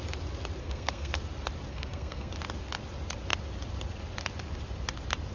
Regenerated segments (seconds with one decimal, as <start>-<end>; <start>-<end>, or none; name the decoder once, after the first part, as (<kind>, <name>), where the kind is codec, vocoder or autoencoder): 0.6-1.1 (codec, SNAC); 1.7-2.3